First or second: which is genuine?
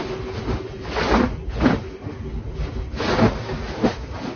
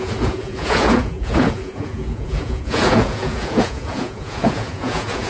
first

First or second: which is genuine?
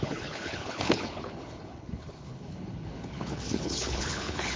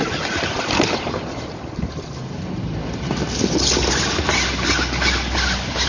second